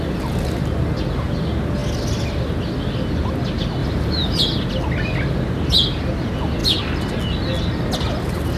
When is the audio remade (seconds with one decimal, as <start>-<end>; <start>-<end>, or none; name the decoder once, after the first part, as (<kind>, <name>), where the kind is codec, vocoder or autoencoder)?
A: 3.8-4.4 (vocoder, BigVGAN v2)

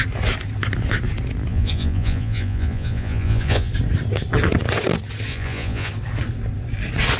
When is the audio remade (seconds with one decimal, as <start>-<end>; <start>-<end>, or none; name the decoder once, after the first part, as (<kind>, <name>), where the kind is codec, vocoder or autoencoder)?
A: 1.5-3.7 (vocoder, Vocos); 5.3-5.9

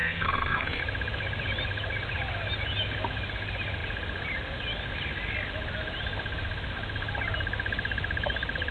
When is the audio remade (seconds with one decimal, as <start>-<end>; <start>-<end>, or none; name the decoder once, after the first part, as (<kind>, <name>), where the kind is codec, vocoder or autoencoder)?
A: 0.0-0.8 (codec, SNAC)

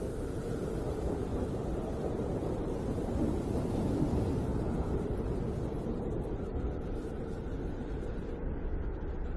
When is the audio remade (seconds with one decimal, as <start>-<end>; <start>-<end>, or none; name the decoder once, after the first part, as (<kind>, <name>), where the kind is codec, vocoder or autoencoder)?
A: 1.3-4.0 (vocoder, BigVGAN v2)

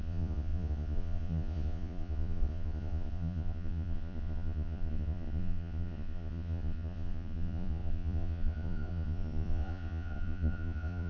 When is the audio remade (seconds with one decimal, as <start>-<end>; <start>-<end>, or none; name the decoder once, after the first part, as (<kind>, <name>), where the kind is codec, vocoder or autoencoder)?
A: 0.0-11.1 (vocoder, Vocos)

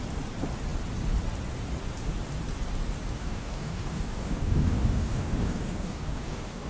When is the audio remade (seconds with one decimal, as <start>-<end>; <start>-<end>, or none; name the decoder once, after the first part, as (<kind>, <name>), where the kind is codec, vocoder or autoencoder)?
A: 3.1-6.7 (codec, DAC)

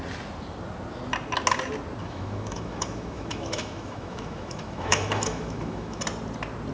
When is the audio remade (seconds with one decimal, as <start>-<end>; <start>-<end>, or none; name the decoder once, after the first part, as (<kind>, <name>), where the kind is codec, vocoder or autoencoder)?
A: 2.0-6.0 (autoencoder, DAC-VAE)